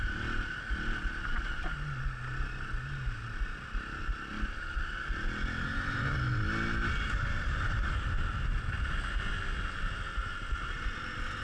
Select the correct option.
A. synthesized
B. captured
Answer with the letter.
B